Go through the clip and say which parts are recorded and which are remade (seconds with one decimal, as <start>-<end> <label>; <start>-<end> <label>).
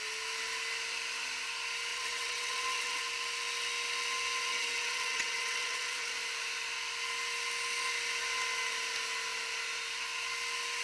0.0-1.9 recorded; 1.9-3.0 remade; 3.0-4.5 recorded; 4.5-6.1 remade; 6.1-10.8 recorded